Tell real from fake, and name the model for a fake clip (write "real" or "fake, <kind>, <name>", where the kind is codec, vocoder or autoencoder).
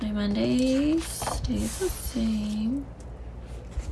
real